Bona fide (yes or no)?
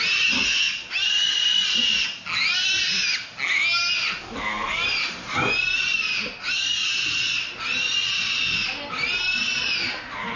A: yes